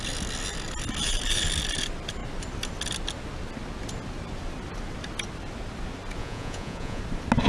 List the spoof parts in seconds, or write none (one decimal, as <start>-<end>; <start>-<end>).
6.2-7.0